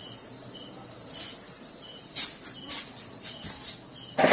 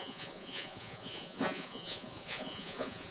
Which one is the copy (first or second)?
second